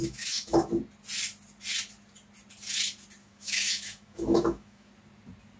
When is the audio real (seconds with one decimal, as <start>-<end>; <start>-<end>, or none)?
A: 0.7-3.2; 4.9-5.6